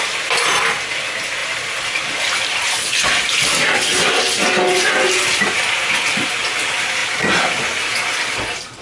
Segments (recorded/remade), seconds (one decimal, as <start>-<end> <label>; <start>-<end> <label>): 0.0-8.8 recorded